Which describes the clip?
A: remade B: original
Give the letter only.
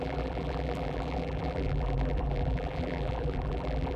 A